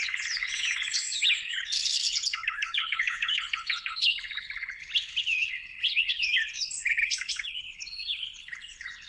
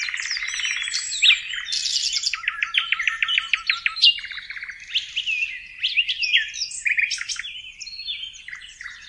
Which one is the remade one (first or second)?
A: first